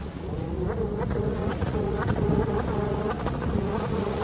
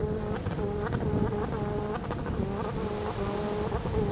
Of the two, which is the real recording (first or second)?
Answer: second